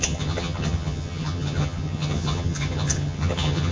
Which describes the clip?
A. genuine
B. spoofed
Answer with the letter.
B